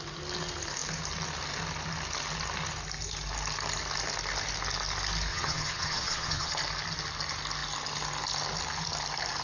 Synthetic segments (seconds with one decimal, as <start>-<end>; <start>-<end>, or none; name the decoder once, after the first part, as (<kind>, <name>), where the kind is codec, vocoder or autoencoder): 5.3-6.5 (vocoder, HiFi-GAN)